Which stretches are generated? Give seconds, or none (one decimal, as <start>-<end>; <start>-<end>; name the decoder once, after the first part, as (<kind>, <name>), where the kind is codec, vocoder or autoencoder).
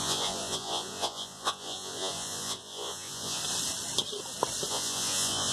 0.0-3.4 (vocoder, Vocos); 4.7-5.5